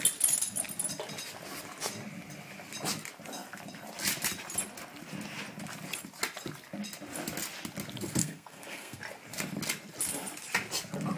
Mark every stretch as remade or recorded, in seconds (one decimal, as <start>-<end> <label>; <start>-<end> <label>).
0.0-8.2 recorded; 8.2-9.0 remade; 9.0-11.2 recorded